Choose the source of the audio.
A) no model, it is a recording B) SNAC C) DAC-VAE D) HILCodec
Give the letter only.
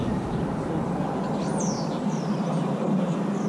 A